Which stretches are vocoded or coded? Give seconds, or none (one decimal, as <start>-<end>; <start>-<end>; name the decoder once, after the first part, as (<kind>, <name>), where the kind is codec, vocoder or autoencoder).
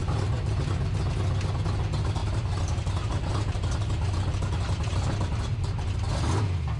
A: 0.0-0.5 (vocoder, BigVGAN v2); 2.2-6.1